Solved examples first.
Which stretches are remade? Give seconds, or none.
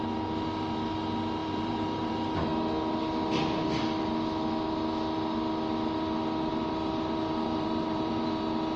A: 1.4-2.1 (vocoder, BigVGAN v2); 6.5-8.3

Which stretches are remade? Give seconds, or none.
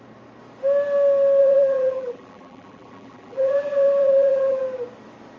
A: 1.4-4.6 (vocoder, BigVGAN v2)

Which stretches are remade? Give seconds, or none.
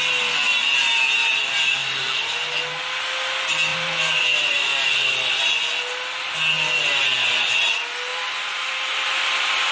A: 1.8-2.3 (vocoder, BigVGAN v2); 3.7-5.3; 8.1-9.7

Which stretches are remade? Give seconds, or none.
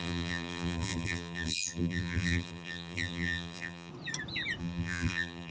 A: 0.0-3.9 (vocoder, BigVGAN v2); 4.6-5.5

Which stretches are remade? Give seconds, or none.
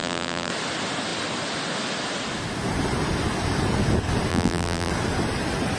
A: 0.0-0.5 (vocoder, BigVGAN v2); 4.3-4.9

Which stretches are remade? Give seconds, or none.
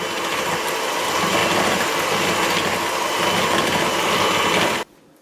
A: none